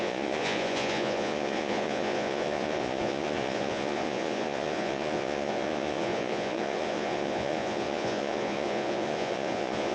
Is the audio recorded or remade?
remade